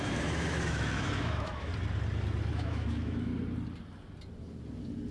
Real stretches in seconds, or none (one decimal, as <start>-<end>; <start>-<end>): 1.7-2.5; 3.3-5.1